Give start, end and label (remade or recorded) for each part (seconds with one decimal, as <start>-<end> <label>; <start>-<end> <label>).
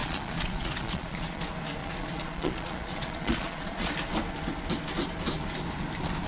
0.0-1.4 remade; 1.4-1.8 recorded; 1.8-3.9 remade; 3.9-6.3 recorded